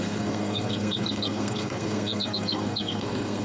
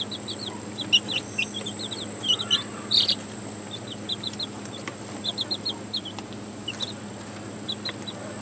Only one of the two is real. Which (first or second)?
second